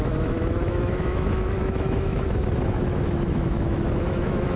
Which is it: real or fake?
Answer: fake